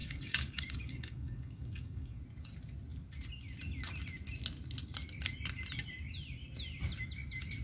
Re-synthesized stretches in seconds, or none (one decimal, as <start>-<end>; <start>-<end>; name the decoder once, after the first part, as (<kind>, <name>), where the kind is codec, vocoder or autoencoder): 0.0-2.2 (codec, DAC)